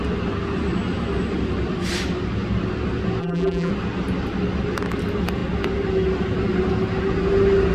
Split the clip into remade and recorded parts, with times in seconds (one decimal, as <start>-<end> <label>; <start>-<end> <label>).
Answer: 0.0-3.2 recorded; 3.2-3.7 remade; 3.7-7.7 recorded